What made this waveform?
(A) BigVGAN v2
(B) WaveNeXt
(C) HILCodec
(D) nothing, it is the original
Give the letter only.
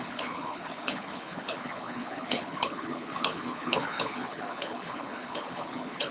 C